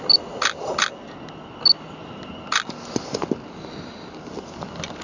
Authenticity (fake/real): real